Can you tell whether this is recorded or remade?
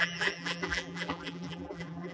remade